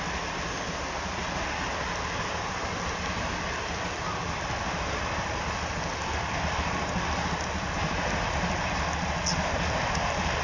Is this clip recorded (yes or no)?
yes